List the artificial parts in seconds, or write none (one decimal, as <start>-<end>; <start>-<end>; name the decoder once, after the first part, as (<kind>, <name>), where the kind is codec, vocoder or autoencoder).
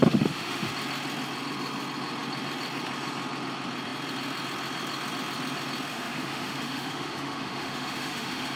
0.0-0.7 (autoencoder, DAC-VAE); 5.9-8.6